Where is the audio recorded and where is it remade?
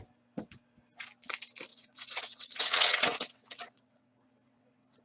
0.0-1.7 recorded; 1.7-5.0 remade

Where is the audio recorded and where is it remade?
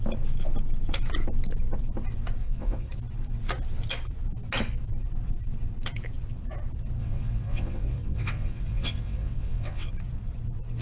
0.0-2.4 recorded; 2.4-2.9 remade; 2.9-7.0 recorded; 7.0-9.9 remade; 9.9-10.8 recorded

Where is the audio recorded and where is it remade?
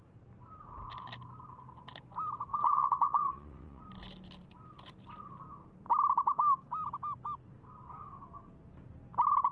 0.0-2.5 recorded; 2.5-3.8 remade; 3.8-9.5 recorded